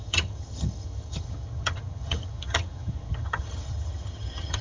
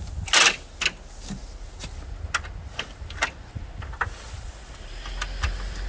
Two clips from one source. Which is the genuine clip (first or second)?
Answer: second